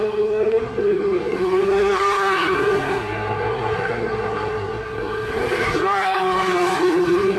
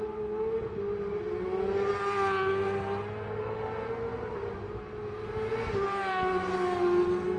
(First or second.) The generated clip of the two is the first